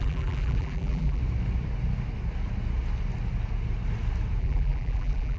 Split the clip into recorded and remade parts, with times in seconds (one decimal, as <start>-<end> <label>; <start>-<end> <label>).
0.0-1.2 remade; 1.2-4.4 recorded; 4.4-5.4 remade